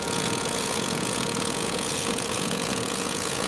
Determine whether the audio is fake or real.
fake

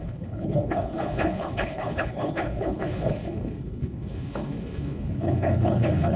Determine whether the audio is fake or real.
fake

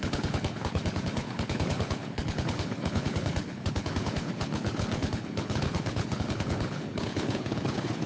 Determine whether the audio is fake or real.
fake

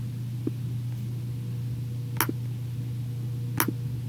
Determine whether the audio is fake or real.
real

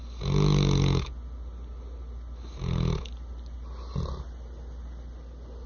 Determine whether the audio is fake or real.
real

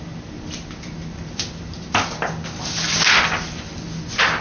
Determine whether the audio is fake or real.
real